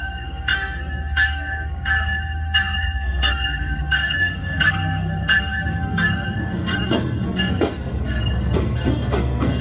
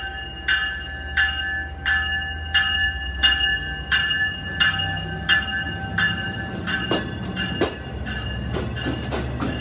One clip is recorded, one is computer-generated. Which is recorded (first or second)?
second